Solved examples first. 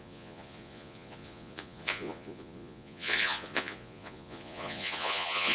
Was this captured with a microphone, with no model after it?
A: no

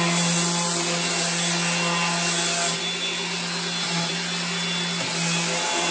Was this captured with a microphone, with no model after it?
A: yes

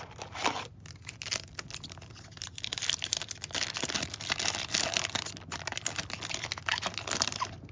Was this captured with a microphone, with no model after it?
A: yes